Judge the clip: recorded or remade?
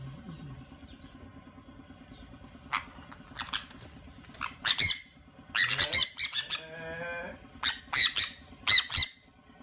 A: recorded